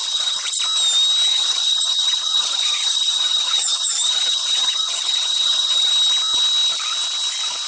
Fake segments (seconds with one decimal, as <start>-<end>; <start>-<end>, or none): 0.0-0.6; 1.3-5.9